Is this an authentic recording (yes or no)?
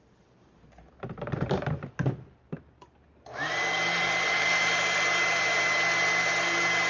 yes